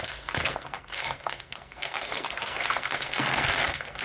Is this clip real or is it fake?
fake